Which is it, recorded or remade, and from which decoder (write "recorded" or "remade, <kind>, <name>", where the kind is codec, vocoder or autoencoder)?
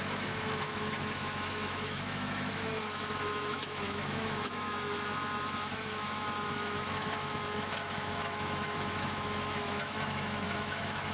remade, autoencoder, DAC-VAE